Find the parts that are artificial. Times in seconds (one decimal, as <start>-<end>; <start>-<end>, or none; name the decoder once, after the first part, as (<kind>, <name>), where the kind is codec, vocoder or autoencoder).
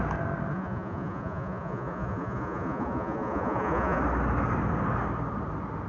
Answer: 0.5-4.0 (vocoder, Vocos)